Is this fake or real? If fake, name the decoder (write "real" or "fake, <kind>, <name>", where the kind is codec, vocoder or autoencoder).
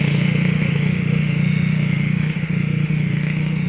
fake, autoencoder, DAC-VAE